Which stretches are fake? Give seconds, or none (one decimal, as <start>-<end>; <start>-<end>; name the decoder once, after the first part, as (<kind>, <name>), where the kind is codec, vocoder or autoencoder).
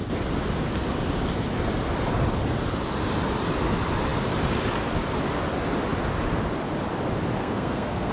7.4-8.1 (codec, SNAC)